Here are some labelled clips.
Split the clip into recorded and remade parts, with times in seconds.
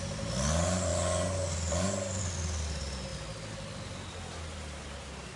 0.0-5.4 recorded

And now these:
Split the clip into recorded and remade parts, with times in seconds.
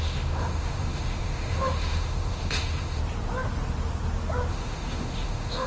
0.0-3.0 remade; 3.0-4.5 recorded; 4.5-5.7 remade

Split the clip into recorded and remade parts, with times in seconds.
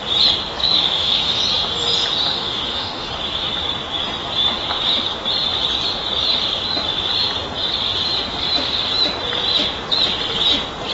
0.0-0.6 recorded; 0.6-1.4 remade; 1.4-2.3 recorded; 2.3-3.1 remade; 3.1-10.9 recorded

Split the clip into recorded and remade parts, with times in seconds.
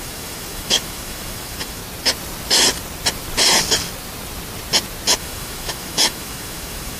0.0-1.8 remade; 1.8-5.2 recorded; 5.2-7.0 remade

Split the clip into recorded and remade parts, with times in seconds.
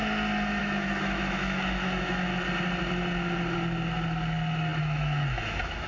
0.0-0.6 recorded; 0.6-2.3 remade; 2.3-4.8 recorded; 4.8-5.9 remade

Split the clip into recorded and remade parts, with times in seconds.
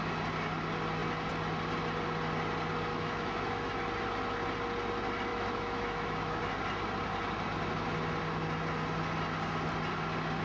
0.0-2.9 recorded; 2.9-3.7 remade; 3.7-5.3 recorded; 5.3-6.4 remade; 6.4-10.4 recorded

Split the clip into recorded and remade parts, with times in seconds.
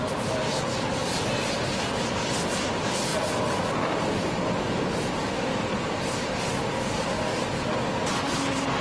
0.0-8.8 recorded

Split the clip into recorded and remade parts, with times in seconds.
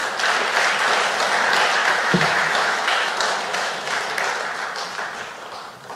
0.0-1.8 recorded; 1.8-3.1 remade; 3.1-3.5 recorded; 3.5-4.0 remade; 4.0-6.0 recorded